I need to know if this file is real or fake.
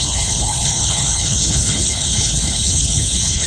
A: fake